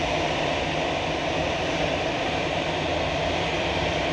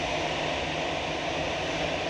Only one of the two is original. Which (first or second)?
second